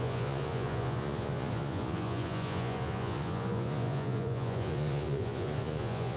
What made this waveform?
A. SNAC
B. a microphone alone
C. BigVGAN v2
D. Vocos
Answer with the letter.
D